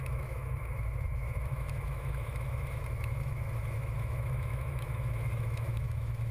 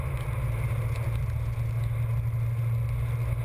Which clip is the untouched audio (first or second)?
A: second